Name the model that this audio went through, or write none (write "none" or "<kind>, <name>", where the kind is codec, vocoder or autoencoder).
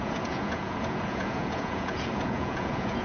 vocoder, Vocos